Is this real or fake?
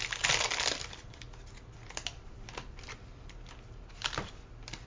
real